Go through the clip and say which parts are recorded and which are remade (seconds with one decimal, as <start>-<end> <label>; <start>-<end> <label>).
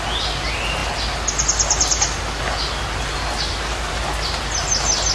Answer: 0.0-5.1 recorded